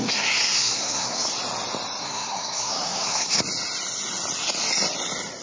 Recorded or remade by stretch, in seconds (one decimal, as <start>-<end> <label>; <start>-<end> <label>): 0.0-1.3 remade; 1.3-2.0 recorded; 2.0-3.4 remade; 3.4-5.4 recorded